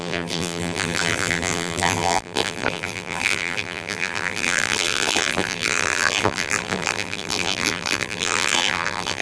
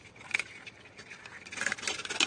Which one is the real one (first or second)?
second